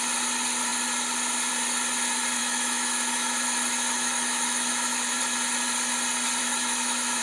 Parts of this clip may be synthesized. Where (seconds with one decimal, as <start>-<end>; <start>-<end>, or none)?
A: 2.4-5.2; 6.4-7.2